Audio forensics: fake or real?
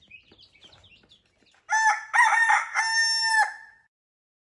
real